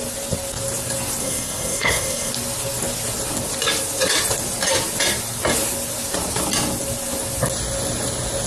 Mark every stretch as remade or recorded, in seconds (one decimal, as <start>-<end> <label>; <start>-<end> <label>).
0.0-1.2 recorded; 1.2-2.3 remade; 2.3-8.5 recorded